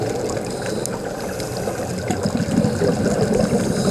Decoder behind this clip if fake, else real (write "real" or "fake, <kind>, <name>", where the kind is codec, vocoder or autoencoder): real